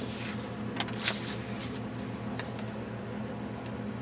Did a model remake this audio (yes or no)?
no